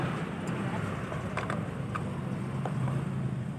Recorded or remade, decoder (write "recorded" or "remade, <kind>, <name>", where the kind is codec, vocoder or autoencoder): recorded